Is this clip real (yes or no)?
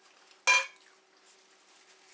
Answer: yes